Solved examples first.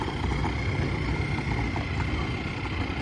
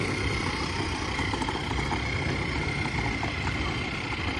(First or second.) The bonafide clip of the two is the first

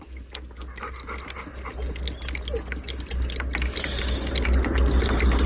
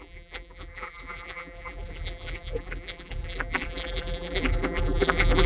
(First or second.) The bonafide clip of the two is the first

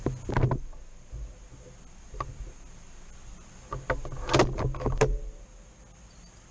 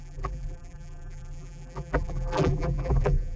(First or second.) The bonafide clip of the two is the first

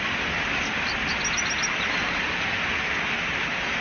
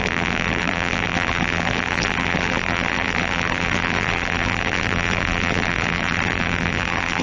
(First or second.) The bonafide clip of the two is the first